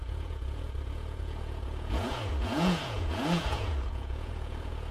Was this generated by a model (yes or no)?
yes